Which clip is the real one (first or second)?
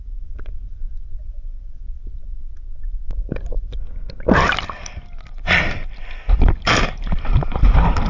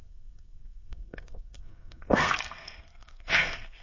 first